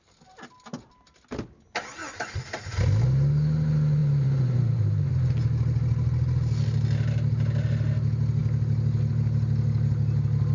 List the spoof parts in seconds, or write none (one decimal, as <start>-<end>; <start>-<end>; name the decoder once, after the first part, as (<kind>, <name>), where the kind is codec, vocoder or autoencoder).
4.0-5.1 (vocoder, BigVGAN v2)